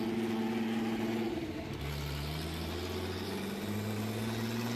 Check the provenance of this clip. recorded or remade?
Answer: recorded